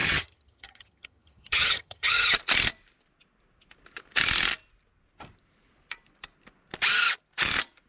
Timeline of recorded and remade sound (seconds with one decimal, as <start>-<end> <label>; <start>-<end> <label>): 0.0-2.4 remade; 2.4-7.9 recorded